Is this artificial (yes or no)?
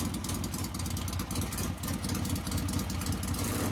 no